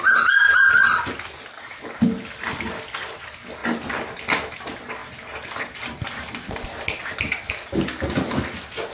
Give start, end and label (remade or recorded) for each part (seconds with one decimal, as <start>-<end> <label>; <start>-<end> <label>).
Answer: 0.0-8.9 recorded

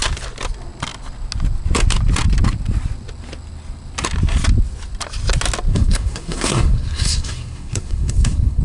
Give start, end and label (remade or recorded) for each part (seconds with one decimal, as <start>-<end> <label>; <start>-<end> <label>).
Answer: 0.0-5.7 recorded; 5.7-8.6 remade

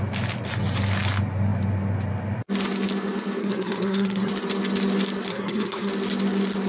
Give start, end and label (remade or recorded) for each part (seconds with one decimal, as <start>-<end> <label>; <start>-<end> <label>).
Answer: 0.0-3.4 recorded; 3.4-4.3 remade; 4.3-5.3 recorded; 5.3-5.9 remade; 5.9-6.7 recorded

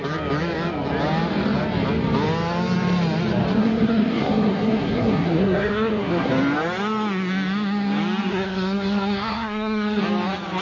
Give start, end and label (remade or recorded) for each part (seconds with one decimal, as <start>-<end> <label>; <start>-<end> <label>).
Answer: 0.0-3.6 recorded; 3.6-6.3 remade; 6.3-8.3 recorded; 8.3-10.0 remade; 10.0-10.6 recorded

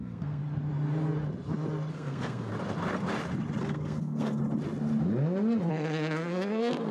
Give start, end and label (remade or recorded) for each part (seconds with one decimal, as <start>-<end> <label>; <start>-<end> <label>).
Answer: 0.0-0.4 remade; 0.4-1.9 recorded; 1.9-2.5 remade; 2.5-3.6 recorded; 3.6-4.4 remade; 4.4-5.7 recorded; 5.7-6.9 remade